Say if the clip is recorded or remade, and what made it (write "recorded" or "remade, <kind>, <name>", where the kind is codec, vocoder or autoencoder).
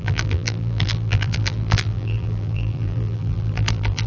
remade, vocoder, BigVGAN v2